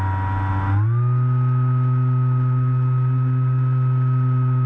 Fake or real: real